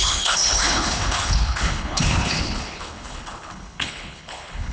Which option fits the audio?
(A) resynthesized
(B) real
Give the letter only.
A